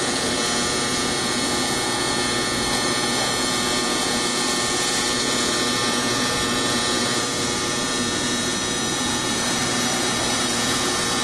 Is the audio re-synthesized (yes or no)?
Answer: yes